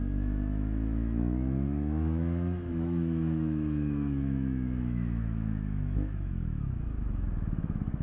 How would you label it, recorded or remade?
remade